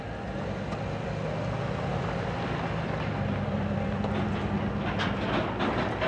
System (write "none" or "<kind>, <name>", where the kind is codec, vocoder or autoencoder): none